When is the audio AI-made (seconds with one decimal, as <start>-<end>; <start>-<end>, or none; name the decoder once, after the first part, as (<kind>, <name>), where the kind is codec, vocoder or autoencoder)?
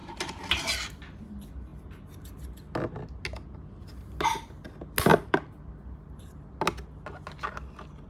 5.1-5.7 (vocoder, BigVGAN v2)